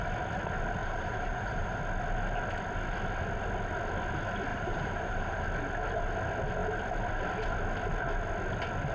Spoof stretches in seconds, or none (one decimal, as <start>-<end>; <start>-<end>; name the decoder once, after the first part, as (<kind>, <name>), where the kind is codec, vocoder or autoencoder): 0.8-1.8 (vocoder, BigVGAN v2); 4.5-5.4